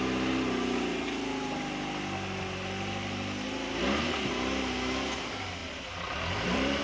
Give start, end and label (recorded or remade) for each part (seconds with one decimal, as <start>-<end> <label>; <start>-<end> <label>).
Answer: 0.0-5.6 recorded; 5.6-6.8 remade